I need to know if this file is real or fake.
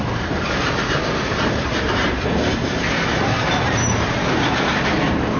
fake